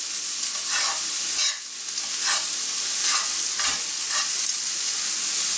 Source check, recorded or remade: recorded